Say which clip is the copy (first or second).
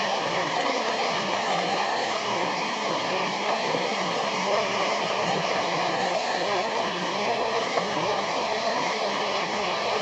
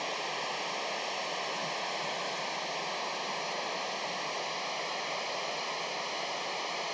first